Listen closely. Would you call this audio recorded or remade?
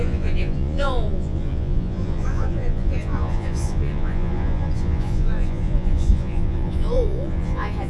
remade